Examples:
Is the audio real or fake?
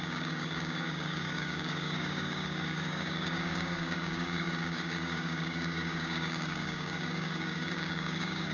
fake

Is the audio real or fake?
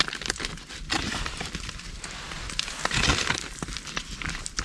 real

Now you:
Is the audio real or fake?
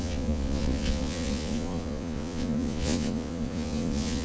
fake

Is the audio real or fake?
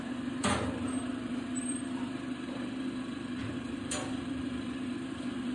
fake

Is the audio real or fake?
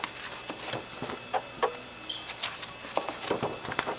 real